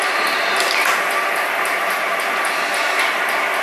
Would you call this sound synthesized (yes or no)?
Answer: no